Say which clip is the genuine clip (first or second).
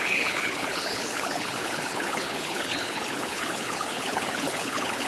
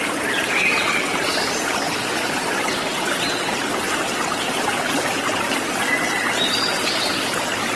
second